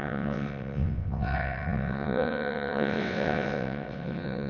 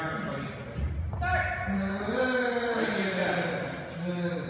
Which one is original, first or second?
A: second